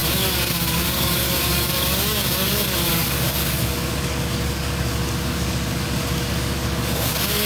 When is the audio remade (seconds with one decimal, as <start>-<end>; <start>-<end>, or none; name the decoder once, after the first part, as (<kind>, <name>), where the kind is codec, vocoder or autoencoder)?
0.0-7.5 (codec, DAC)